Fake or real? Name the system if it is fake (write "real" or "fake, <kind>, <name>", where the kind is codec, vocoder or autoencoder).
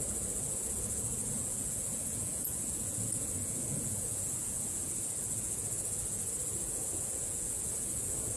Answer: fake, vocoder, Vocos